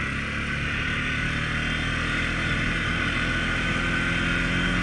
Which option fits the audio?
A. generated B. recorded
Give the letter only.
B